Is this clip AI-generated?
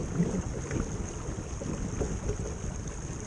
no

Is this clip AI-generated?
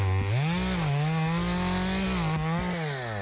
no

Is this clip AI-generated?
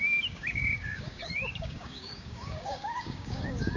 yes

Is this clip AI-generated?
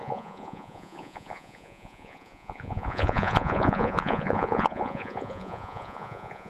yes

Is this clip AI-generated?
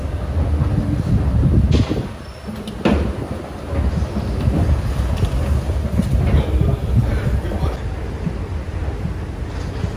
no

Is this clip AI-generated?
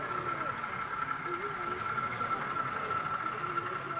no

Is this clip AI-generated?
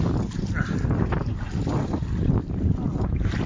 no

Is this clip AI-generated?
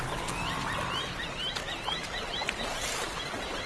no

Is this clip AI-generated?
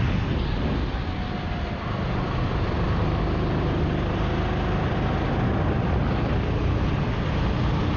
no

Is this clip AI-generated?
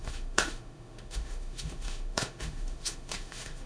yes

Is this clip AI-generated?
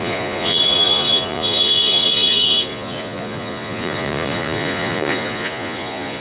yes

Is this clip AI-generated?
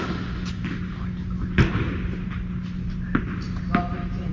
no